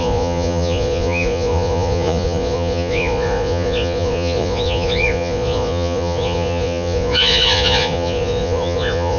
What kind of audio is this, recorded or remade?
remade